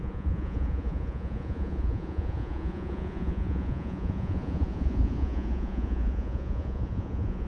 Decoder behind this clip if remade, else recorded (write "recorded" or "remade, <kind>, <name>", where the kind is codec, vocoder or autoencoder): remade, vocoder, Vocos